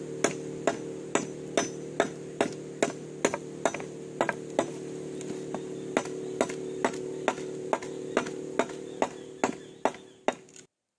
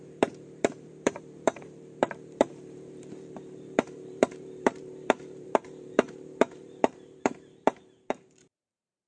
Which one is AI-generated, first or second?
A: second